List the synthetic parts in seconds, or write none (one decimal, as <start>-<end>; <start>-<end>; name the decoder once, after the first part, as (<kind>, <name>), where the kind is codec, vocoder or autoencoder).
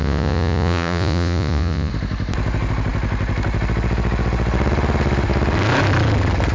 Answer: 0.0-1.9 (vocoder, Vocos)